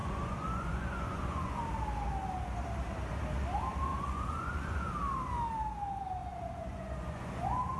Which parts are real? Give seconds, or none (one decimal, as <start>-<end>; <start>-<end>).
1.6-3.9; 4.9-6.2

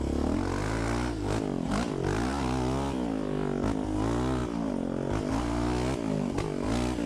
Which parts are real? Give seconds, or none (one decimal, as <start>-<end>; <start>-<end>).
0.0-7.1

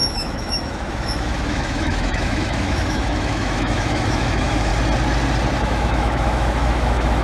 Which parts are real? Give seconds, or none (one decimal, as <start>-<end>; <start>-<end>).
4.7-5.6

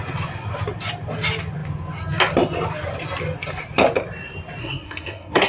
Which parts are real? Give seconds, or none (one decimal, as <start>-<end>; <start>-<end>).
0.0-4.6

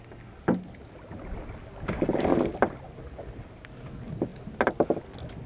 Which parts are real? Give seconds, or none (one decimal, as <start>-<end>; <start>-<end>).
0.0-5.5

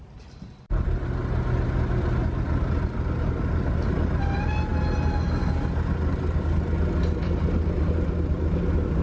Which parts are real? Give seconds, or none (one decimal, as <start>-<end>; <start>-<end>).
0.0-9.0

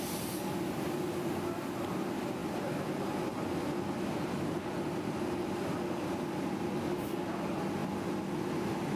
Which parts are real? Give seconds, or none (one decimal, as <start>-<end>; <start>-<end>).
0.0-9.0